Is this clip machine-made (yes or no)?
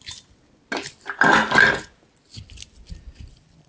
no